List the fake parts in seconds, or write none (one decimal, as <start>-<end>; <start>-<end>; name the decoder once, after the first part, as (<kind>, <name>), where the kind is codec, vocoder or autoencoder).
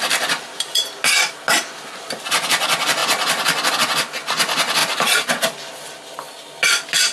4.8-5.7 (vocoder, BigVGAN v2)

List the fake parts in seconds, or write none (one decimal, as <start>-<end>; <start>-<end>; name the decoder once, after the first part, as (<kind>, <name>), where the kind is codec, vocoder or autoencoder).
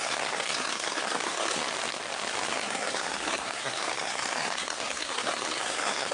0.0-1.6 (codec, SNAC); 2.5-6.1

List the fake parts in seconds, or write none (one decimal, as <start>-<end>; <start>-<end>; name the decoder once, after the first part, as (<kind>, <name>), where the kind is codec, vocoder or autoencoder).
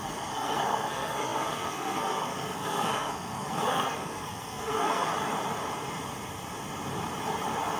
0.0-5.1 (codec, SNAC)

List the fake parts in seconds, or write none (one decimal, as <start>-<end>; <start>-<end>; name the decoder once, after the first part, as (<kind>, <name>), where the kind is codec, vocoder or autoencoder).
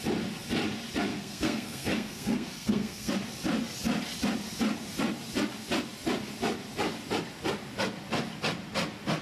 1.1-3.1 (codec, SNAC)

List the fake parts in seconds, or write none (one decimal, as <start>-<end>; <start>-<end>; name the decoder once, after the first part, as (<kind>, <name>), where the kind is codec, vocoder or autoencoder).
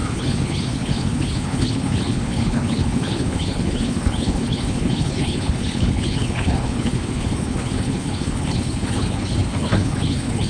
0.0-10.5 (codec, HILCodec)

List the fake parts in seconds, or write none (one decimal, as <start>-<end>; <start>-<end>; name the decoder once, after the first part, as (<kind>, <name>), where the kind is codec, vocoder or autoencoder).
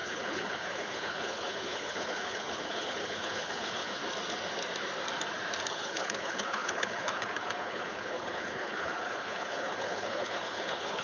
0.0-4.0 (codec, HILCodec); 5.7-11.0